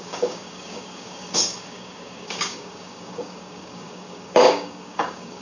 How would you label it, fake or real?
fake